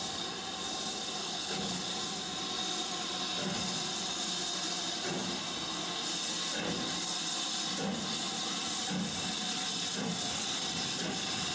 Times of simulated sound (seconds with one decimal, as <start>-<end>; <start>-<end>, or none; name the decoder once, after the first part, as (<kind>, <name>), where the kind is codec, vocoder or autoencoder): 1.2-1.8 (codec, HILCodec)